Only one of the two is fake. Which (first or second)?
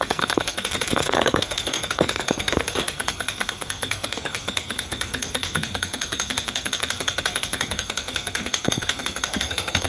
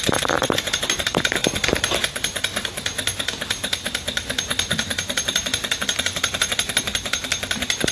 first